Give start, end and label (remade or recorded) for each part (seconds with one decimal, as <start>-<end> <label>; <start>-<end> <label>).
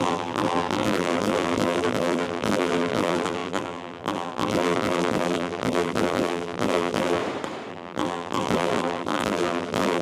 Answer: 0.0-7.2 remade; 7.2-7.7 recorded; 7.7-10.0 remade